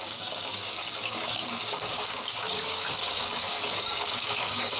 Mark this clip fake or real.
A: fake